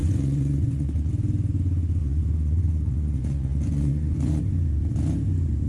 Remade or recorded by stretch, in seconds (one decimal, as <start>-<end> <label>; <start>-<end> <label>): 0.0-1.1 remade; 1.1-2.0 recorded; 2.0-4.4 remade; 4.4-5.7 recorded